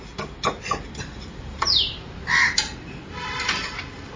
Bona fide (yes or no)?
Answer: no